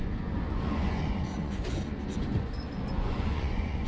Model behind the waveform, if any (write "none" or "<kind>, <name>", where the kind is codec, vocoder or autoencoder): vocoder, Vocos